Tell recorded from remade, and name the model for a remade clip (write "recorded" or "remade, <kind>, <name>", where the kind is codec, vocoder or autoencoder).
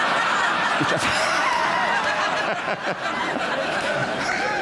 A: recorded